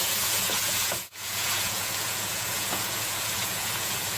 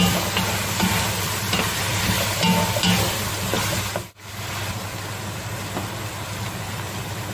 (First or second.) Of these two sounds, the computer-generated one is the first